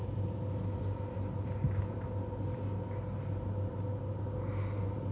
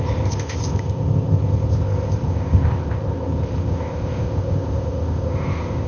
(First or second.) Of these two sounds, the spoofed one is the second